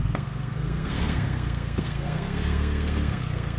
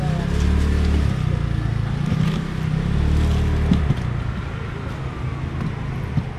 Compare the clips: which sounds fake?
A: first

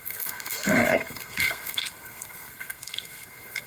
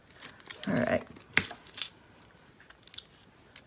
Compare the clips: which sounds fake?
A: first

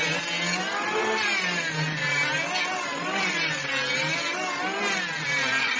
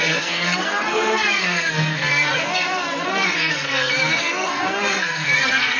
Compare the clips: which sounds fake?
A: second